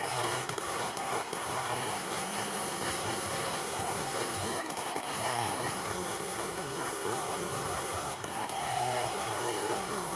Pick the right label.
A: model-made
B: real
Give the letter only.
A